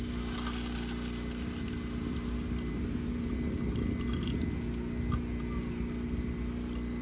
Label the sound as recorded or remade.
recorded